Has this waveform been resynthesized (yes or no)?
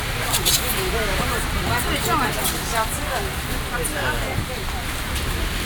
no